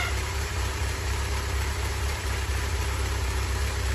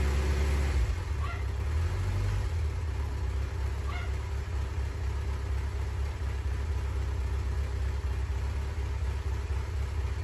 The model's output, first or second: first